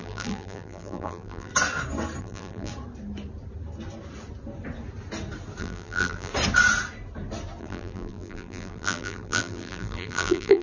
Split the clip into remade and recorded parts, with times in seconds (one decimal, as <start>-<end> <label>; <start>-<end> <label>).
0.0-1.5 remade; 1.5-2.2 recorded; 2.2-2.7 remade; 2.7-5.6 recorded; 5.6-6.3 remade; 6.3-7.6 recorded; 7.6-10.6 remade